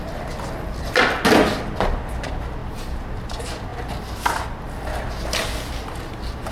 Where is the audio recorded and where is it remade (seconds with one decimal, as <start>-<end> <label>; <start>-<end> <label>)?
0.0-6.5 recorded